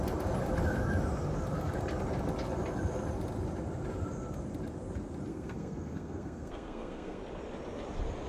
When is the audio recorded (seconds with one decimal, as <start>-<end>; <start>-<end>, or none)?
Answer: 0.0-5.3; 7.2-8.3